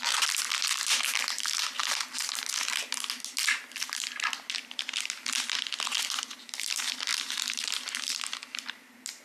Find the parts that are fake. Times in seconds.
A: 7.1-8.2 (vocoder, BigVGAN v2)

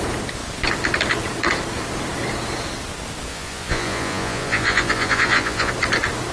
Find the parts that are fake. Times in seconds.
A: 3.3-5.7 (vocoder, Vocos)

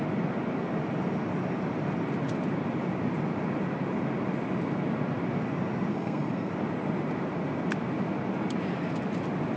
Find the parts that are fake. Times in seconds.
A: 5.9-6.5 (codec, SNAC)

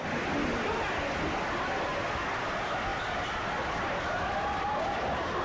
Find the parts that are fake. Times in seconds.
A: none

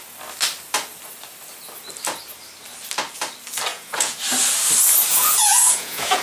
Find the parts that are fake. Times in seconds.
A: 3.7-4.2 (vocoder, Vocos); 5.1-6.2